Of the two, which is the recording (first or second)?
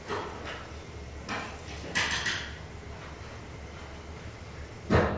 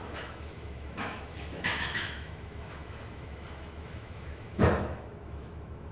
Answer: first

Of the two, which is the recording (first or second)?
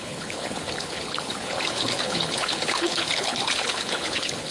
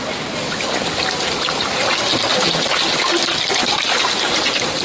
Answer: second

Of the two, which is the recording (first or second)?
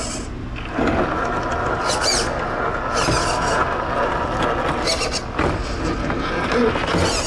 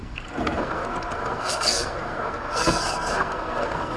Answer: first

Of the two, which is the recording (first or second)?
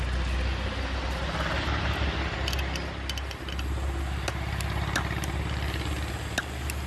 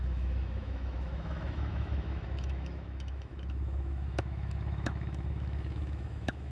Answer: first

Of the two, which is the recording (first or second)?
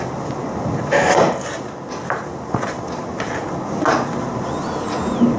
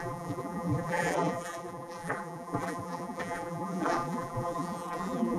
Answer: first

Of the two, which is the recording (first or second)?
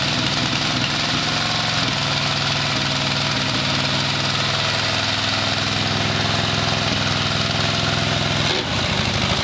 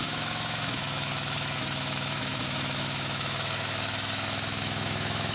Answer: first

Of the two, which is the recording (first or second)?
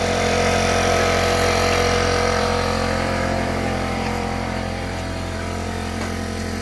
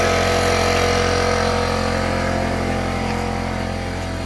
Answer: second